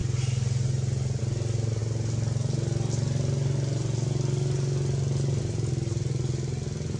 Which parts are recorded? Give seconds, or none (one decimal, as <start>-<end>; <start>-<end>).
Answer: 0.0-7.0